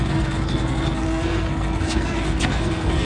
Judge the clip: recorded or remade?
remade